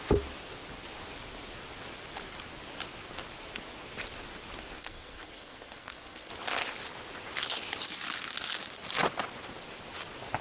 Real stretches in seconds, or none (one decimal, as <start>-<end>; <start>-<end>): 0.0-4.8; 6.3-10.4